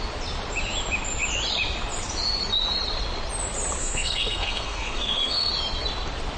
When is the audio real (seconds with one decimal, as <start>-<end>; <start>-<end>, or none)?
0.0-3.8; 5.5-6.4